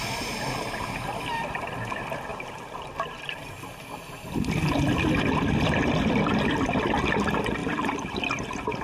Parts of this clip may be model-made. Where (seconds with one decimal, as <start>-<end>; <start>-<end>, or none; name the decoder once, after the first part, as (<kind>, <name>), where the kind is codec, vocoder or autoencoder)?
2.3-3.8 (vocoder, BigVGAN v2); 7.6-8.2